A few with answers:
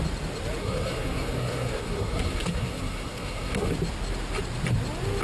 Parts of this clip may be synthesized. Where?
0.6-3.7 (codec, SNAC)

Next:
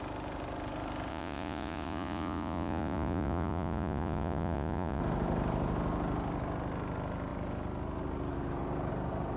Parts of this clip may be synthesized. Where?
1.1-5.0 (vocoder, Vocos)

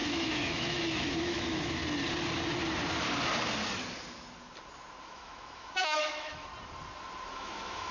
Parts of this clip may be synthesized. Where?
0.0-1.8 (autoencoder, DAC-VAE); 5.0-6.5; 7.3-7.9

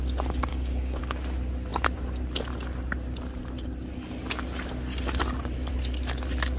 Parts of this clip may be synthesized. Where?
0.5-1.0 (codec, DAC)